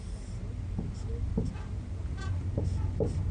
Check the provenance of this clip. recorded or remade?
recorded